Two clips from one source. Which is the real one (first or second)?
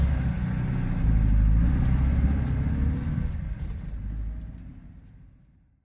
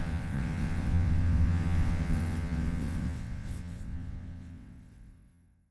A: first